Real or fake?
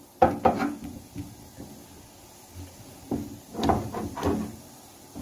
real